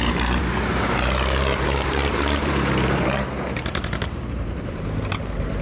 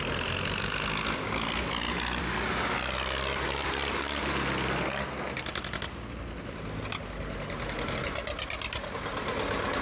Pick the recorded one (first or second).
second